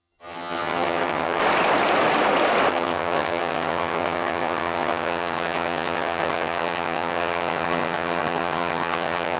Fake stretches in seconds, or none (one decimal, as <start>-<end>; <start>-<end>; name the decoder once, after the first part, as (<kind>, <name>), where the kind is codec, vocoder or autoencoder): 0.0-1.4 (vocoder, HiFi-GAN); 2.7-9.4